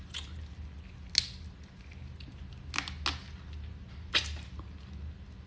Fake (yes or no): no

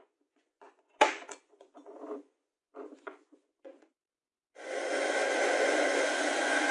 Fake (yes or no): yes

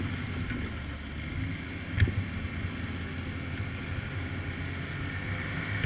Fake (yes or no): no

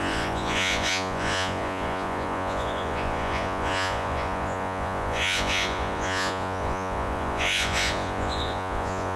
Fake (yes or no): yes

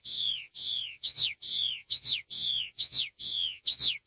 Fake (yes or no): yes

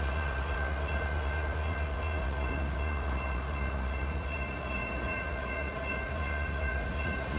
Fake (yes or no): yes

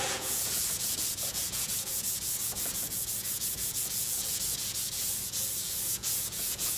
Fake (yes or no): yes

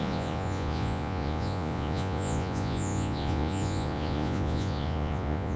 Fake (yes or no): yes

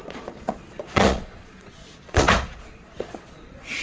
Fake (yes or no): yes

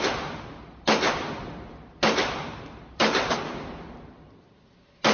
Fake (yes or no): no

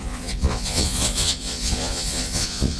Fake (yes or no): yes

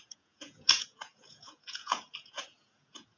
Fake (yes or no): yes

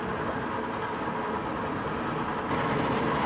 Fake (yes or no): no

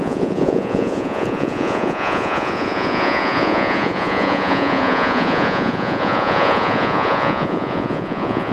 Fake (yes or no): yes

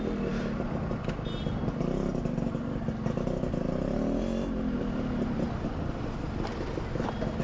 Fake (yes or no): no